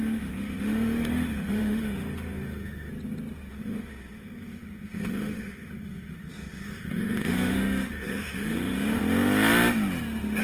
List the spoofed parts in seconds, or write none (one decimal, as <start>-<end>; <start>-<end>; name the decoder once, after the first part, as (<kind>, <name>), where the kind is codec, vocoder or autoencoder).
0.0-2.9 (autoencoder, DAC-VAE); 3.5-9.0